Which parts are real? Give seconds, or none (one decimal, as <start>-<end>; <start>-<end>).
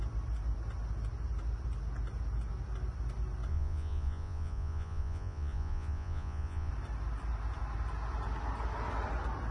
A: 0.0-3.5; 6.7-9.5